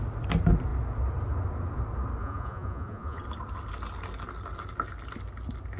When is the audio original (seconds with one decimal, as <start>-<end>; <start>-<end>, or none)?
0.0-2.2; 3.2-5.8

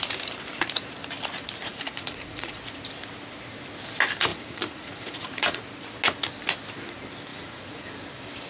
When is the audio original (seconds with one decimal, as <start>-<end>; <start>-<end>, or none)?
0.0-1.6; 2.6-4.3; 5.6-7.3; 7.9-8.5

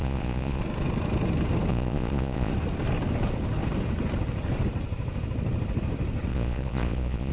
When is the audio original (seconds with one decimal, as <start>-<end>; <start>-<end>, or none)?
0.6-1.7; 2.5-6.3

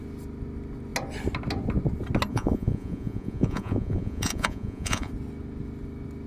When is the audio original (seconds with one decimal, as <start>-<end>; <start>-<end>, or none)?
0.0-2.3; 5.1-6.3